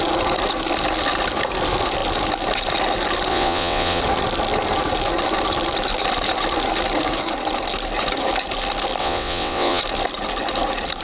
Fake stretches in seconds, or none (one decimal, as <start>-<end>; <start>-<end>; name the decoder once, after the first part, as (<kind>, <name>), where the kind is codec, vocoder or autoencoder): 3.3-4.0 (vocoder, WaveNeXt); 9.0-9.8